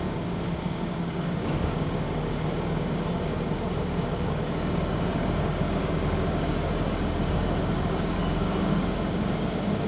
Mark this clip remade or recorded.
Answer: remade